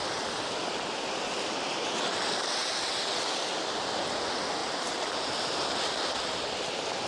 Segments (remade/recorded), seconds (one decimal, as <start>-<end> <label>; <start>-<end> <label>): 0.0-4.6 recorded; 4.6-5.7 remade; 5.7-7.1 recorded